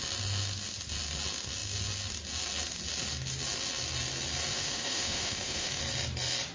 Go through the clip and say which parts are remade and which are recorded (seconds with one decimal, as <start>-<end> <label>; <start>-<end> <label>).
0.0-4.5 recorded; 4.5-5.8 remade; 5.8-6.5 recorded